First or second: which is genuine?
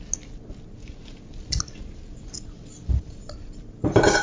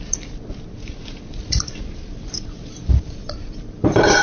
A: first